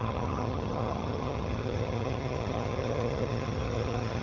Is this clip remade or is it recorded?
remade